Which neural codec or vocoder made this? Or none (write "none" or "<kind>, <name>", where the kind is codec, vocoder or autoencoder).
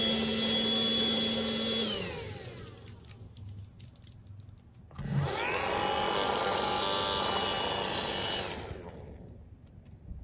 none